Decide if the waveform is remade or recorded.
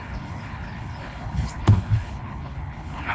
remade